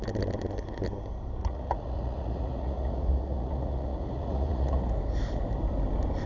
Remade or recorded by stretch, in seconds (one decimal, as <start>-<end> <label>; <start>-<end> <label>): 0.0-1.4 recorded; 1.4-4.9 remade; 4.9-6.3 recorded